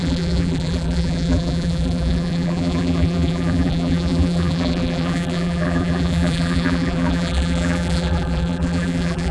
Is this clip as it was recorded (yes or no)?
no